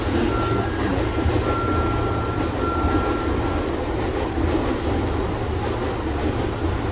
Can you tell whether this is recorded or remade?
recorded